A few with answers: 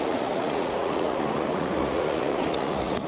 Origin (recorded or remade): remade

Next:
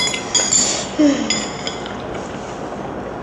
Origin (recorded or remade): recorded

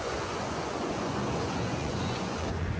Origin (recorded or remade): remade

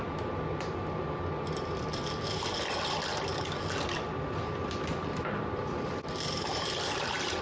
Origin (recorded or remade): recorded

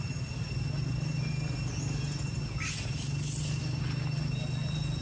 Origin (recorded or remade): recorded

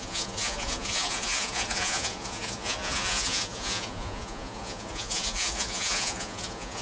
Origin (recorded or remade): remade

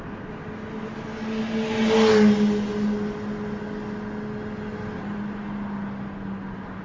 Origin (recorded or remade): recorded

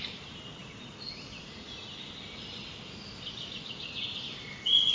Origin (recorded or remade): recorded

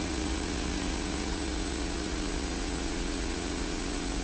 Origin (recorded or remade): remade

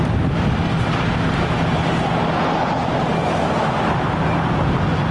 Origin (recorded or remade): recorded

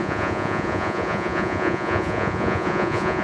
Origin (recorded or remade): remade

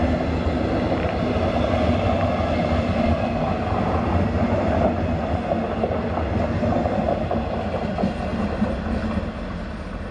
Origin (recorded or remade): recorded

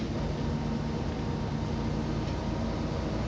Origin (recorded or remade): recorded